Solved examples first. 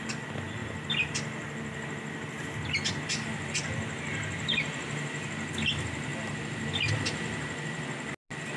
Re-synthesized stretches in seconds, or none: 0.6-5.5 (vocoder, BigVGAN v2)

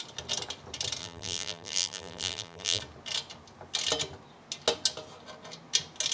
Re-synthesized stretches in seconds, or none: 1.0-2.8 (vocoder, BigVGAN v2)

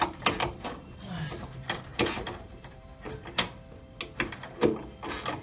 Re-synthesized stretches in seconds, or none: 1.9-3.0 (vocoder, BigVGAN v2)

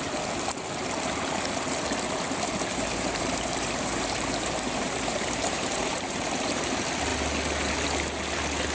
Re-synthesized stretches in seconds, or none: 2.7-6.6 (vocoder, BigVGAN v2)

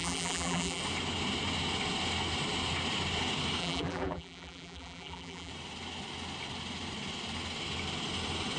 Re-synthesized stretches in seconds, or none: 0.0-0.8 (vocoder, BigVGAN v2); 3.6-5.5

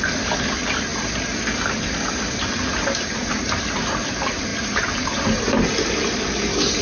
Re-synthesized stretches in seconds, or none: 0.0-4.5 (vocoder, BigVGAN v2); 5.4-6.8